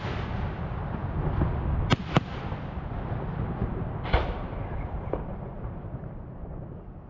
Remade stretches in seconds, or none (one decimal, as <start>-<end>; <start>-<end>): none